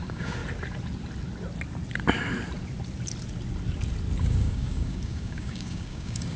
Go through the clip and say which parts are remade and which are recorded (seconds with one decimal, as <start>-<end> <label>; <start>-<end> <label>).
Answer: 0.0-0.4 remade; 0.4-4.2 recorded; 4.2-6.4 remade